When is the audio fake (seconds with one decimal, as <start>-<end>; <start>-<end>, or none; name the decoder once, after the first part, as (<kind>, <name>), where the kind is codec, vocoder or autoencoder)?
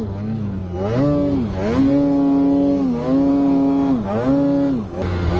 none